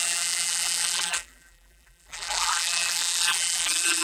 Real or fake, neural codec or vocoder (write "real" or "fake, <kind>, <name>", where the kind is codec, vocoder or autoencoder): fake, vocoder, BigVGAN v2